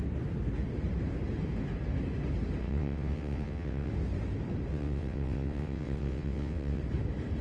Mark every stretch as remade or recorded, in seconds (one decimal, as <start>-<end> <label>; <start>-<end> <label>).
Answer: 0.0-2.6 recorded; 2.6-3.9 remade; 3.9-4.7 recorded; 4.7-6.8 remade; 6.8-7.4 recorded